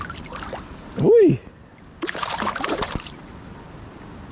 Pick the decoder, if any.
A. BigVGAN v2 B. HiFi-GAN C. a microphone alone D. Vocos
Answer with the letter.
C